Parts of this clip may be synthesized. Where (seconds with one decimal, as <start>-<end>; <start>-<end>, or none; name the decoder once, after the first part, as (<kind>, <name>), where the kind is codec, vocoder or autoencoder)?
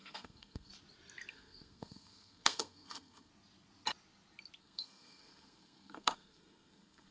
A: 0.0-0.7 (codec, SNAC); 1.3-3.3; 4.6-7.1